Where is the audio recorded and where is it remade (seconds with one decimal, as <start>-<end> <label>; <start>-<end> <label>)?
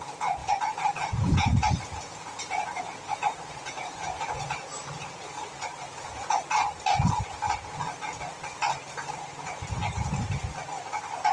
0.0-4.7 remade; 4.7-5.8 recorded; 5.8-6.6 remade; 6.6-11.3 recorded